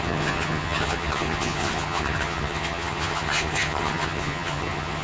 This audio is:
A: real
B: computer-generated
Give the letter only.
B